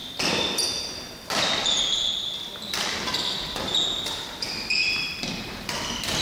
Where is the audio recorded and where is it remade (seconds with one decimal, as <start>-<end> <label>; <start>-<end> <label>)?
0.0-6.2 recorded